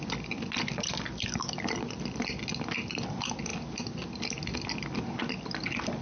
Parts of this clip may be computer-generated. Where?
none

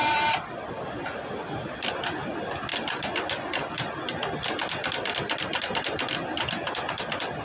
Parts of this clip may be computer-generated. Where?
none

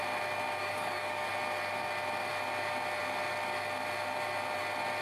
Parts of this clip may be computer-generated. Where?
0.6-1.3

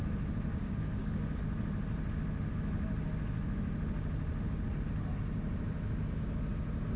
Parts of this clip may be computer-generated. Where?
0.5-1.4

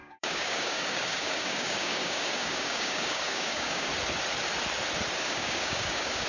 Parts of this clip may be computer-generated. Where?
0.0-3.9; 5.2-6.3